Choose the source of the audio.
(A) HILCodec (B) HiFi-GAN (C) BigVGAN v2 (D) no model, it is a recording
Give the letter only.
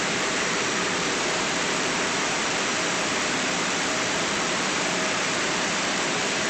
C